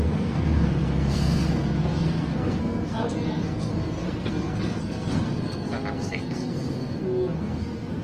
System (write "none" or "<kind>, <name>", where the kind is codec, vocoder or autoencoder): codec, SNAC